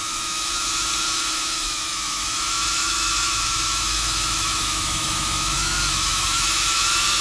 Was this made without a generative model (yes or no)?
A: no